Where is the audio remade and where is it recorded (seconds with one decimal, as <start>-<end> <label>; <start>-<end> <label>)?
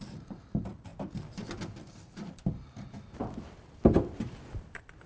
0.0-5.1 remade